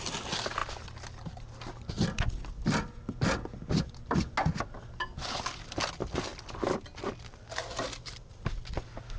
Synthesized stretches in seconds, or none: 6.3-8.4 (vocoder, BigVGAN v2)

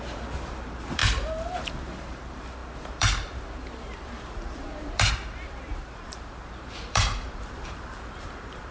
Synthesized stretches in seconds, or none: 0.0-1.0 (vocoder, BigVGAN v2); 1.6-8.7

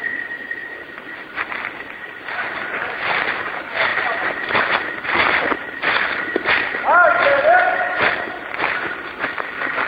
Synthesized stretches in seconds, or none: 0.6-1.8 (vocoder, BigVGAN v2); 3.9-6.5

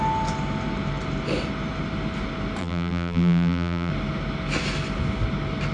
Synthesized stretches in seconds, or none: 2.6-3.9 (vocoder, BigVGAN v2)

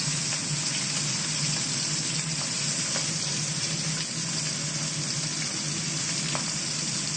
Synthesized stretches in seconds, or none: none

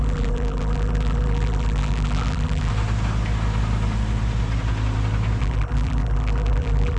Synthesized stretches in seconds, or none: 0.0-2.7 (vocoder, BigVGAN v2); 5.4-7.0

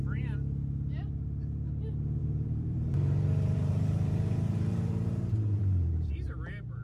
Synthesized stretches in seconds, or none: 2.2-6.1 (vocoder, BigVGAN v2)

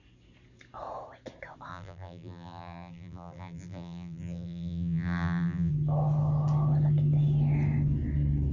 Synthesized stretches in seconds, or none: 1.7-5.7 (vocoder, BigVGAN v2)